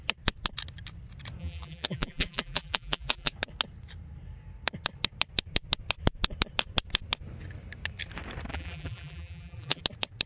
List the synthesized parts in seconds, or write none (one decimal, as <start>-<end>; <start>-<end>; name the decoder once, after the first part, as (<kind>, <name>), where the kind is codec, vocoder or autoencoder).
1.4-3.3 (vocoder, BigVGAN v2); 8.5-9.8